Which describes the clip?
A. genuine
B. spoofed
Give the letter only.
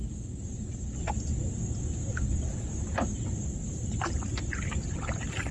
A